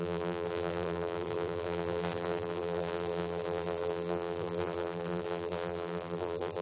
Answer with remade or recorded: remade